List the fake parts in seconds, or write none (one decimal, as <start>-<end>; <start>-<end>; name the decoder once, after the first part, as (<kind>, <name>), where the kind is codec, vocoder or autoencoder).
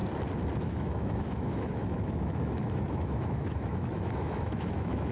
0.6-5.1 (autoencoder, DAC-VAE)